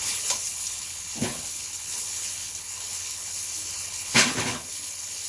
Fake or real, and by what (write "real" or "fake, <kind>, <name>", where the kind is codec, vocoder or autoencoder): fake, codec, HILCodec